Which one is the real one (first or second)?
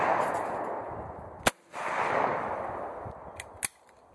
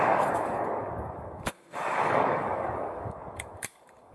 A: first